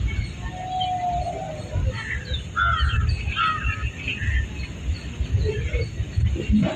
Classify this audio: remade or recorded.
recorded